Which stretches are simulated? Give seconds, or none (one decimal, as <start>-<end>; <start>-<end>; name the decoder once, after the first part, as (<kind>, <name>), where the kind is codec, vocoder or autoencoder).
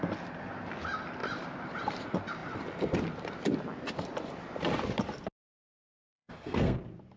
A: 6.0-6.8 (codec, SNAC)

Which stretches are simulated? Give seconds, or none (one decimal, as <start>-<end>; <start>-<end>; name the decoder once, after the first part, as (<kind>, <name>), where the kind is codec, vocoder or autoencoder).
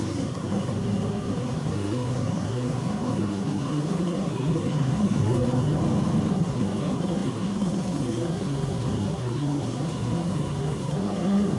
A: 0.0-5.8 (codec, SNAC); 6.3-11.6